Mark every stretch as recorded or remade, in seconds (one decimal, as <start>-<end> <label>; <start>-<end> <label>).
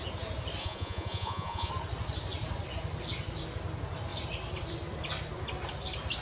0.0-0.6 recorded; 0.6-1.7 remade; 1.7-6.2 recorded